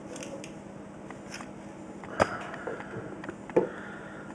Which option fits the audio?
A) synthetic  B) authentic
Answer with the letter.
B